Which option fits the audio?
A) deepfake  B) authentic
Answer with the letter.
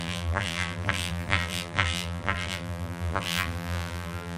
A